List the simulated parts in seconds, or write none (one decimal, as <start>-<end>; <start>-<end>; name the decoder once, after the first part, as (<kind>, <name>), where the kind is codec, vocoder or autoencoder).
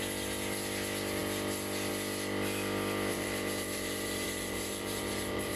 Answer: 3.1-5.6 (vocoder, BigVGAN v2)